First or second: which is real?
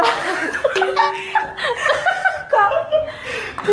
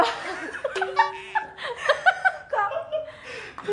second